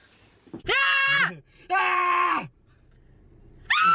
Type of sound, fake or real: fake